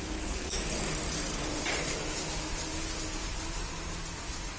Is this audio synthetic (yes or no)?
no